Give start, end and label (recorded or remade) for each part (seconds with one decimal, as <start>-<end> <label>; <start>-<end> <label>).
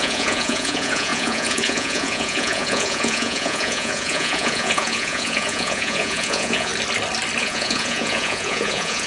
0.0-6.7 remade; 6.7-7.4 recorded; 7.4-9.1 remade